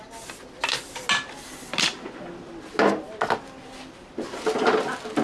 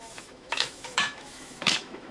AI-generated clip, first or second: second